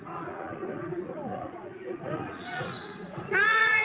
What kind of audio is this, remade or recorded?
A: remade